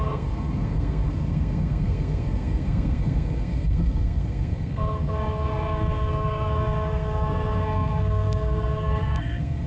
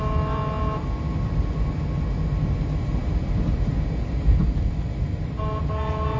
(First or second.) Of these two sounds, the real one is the second